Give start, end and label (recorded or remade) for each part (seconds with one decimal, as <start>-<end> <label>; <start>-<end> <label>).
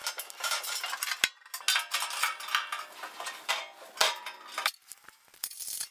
0.0-5.9 recorded